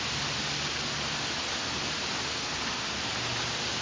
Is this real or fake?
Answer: real